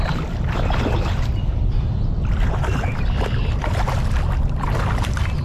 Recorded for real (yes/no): yes